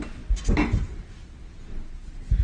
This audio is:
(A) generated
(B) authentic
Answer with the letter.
B